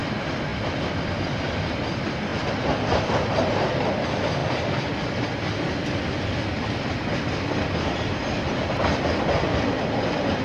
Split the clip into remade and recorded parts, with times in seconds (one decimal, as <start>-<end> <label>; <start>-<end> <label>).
0.0-2.3 remade; 2.3-3.0 recorded; 3.0-4.4 remade; 4.4-8.7 recorded; 8.7-10.4 remade